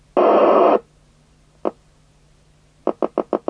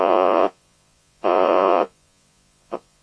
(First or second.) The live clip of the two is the first